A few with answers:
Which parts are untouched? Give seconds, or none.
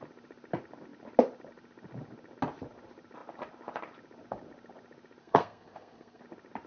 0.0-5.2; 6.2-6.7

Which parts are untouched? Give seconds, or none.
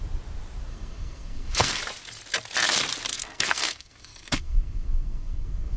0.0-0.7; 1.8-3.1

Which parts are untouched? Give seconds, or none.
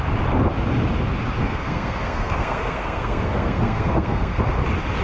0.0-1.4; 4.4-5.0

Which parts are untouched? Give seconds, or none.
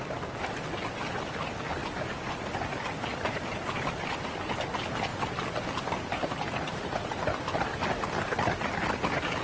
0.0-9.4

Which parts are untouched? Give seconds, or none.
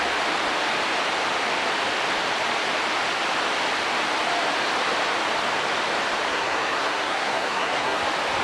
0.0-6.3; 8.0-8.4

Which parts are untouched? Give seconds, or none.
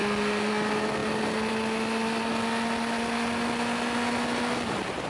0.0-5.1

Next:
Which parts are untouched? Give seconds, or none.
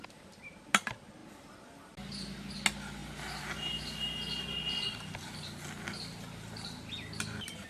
0.0-7.7